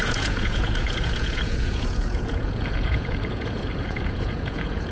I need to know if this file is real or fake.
fake